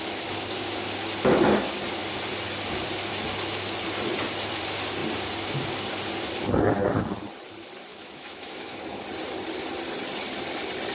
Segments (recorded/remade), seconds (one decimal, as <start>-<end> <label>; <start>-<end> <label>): 0.0-7.9 recorded; 7.9-9.0 remade; 9.0-10.9 recorded